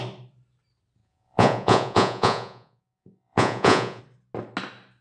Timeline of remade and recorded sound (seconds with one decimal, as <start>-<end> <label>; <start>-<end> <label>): 0.0-1.0 recorded; 1.0-4.0 remade; 4.0-5.0 recorded